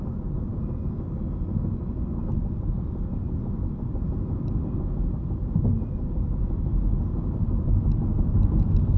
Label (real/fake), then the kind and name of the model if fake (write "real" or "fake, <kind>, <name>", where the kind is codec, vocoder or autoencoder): real